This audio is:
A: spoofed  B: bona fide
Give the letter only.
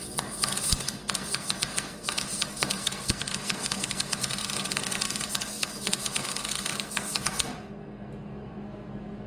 A